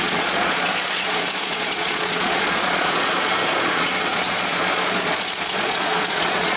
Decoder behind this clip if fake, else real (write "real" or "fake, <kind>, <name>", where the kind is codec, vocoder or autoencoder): fake, vocoder, Vocos